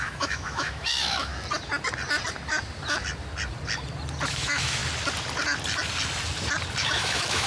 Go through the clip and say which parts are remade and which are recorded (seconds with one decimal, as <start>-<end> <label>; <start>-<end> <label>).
0.0-1.3 remade; 1.3-4.3 recorded; 4.3-4.8 remade; 4.8-6.8 recorded; 6.8-7.5 remade